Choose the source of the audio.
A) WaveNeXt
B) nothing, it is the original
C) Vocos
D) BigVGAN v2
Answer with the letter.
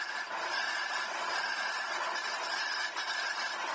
D